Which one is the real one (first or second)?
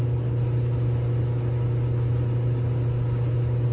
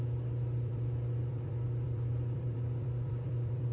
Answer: first